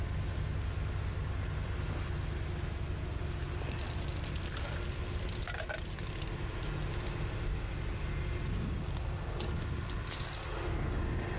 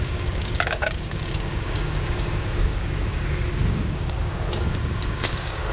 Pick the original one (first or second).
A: first